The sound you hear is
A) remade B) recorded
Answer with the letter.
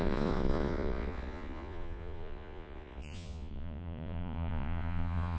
A